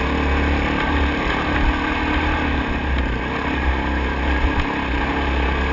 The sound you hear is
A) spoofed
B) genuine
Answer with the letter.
B